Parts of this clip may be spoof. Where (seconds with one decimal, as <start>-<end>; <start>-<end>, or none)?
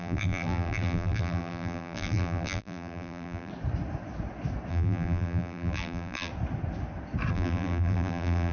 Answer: 0.0-3.5; 4.7-6.3; 7.3-8.5